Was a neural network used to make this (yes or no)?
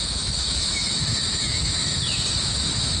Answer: yes